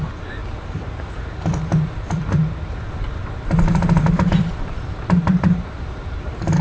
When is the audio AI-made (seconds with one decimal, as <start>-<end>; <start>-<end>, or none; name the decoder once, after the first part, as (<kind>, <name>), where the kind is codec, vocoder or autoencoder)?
0.0-0.4 (vocoder, BigVGAN v2); 1.0-6.6